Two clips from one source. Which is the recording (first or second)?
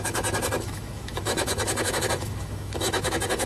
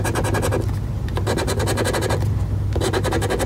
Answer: second